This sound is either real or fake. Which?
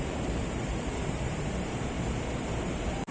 fake